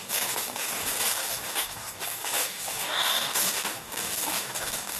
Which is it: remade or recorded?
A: remade